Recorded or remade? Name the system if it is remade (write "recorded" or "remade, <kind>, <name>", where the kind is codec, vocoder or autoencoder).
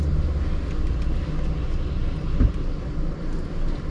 recorded